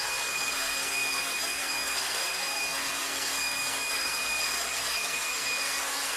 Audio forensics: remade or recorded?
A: remade